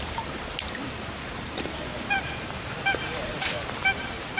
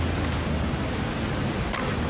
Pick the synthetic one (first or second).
first